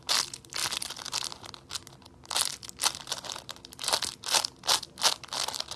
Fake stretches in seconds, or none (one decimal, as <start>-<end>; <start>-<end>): none